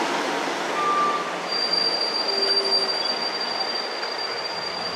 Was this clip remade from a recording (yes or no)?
no